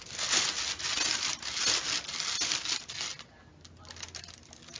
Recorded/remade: recorded